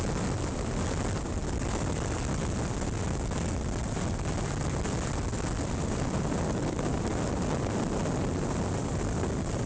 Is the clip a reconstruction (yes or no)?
no